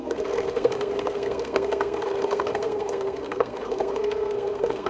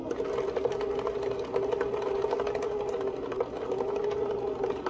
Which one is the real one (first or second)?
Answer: second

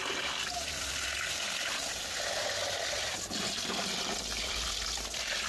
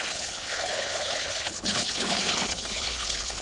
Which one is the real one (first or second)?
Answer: first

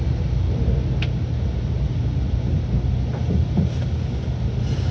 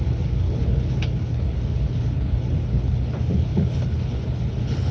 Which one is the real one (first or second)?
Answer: first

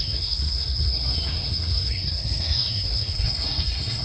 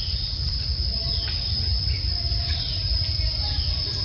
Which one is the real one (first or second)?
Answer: second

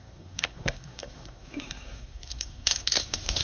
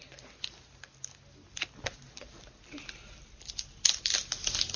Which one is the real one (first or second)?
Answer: second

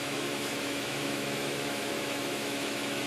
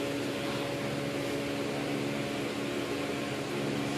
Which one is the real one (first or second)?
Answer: second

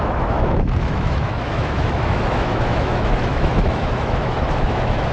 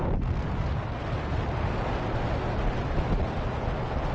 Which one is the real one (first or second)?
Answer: second